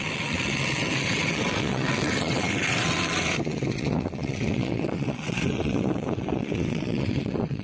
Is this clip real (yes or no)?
no